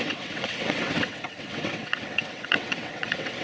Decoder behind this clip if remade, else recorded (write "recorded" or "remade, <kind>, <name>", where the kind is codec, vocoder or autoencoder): remade, vocoder, WaveNeXt